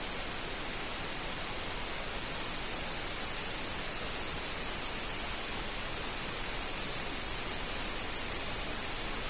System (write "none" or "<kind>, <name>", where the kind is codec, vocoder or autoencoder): none